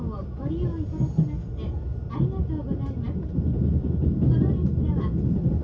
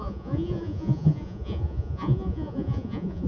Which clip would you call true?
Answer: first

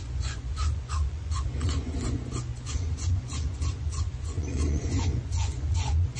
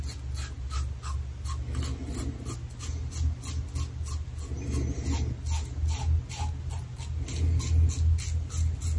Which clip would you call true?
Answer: second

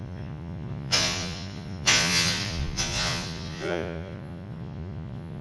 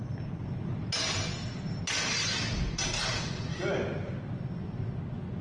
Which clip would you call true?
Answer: second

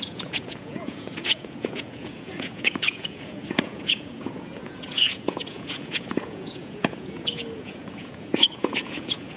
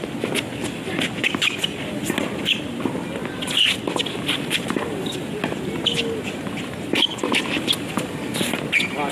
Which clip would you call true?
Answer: second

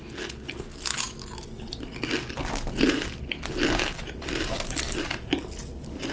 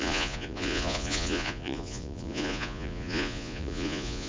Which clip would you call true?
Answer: first